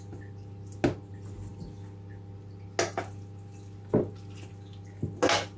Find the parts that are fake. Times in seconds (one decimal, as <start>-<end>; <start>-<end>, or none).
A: none